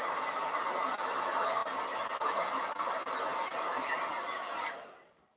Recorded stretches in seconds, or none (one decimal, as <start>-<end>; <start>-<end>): 0.0-5.4